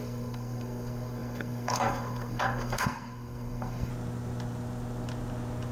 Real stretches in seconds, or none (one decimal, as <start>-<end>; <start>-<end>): 3.9-5.7